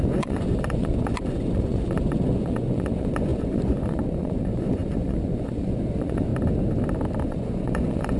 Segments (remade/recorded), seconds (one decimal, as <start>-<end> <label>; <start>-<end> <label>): 0.0-6.3 remade; 6.3-7.2 recorded; 7.2-8.2 remade

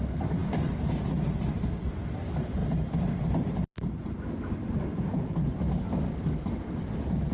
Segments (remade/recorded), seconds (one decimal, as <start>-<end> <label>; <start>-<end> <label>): 0.0-4.9 recorded; 4.9-5.5 remade; 5.5-7.3 recorded

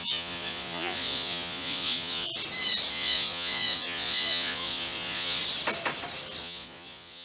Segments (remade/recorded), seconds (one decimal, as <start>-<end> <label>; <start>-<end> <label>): 0.0-2.3 remade; 2.3-2.9 recorded; 2.9-5.4 remade; 5.4-6.4 recorded; 6.4-7.2 remade

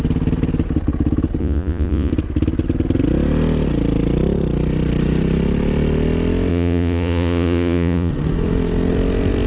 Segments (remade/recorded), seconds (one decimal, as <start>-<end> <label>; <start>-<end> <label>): 0.0-1.4 recorded; 1.4-2.1 remade; 2.1-6.5 recorded; 6.5-8.1 remade; 8.1-9.5 recorded

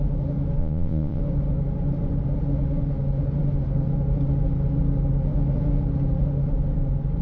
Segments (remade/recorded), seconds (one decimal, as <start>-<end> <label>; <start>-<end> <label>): 0.0-0.6 recorded; 0.6-1.2 remade; 1.2-7.2 recorded

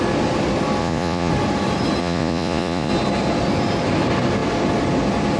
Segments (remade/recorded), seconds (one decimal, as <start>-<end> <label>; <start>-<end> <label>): 0.0-0.8 recorded; 0.8-1.3 remade; 1.3-2.0 recorded; 2.0-2.9 remade; 2.9-5.4 recorded